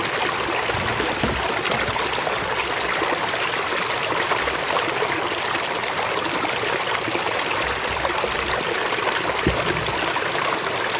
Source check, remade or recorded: recorded